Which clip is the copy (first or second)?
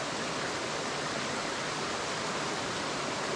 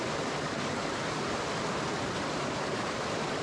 second